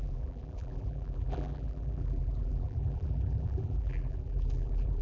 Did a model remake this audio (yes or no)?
yes